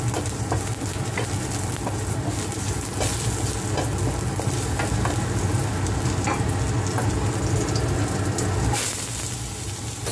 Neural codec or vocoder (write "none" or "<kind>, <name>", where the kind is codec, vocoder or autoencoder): none